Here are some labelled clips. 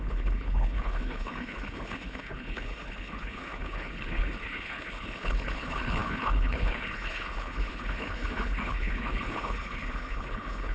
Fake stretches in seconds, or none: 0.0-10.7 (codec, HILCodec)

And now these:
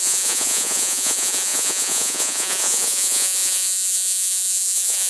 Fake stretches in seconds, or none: 0.0-5.1 (vocoder, Vocos)

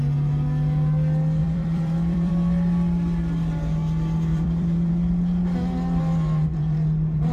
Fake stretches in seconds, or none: 1.4-2.3 (vocoder, BigVGAN v2); 4.3-4.9

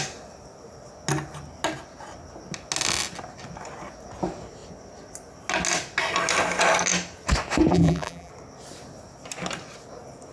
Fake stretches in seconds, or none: 7.7-8.3 (vocoder, BigVGAN v2)

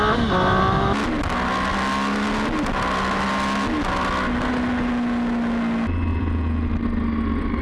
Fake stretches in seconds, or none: 6.1-6.7 (vocoder, Vocos)

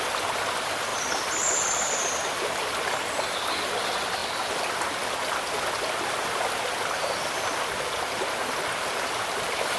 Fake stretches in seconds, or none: 0.9-2.0 (vocoder, BigVGAN v2)

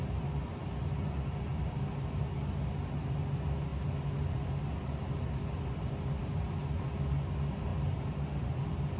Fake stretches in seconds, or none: none

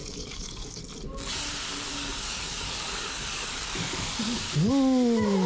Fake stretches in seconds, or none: 0.0-0.8 (codec, DAC); 1.9-4.7